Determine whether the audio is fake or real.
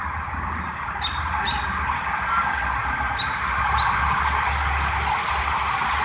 real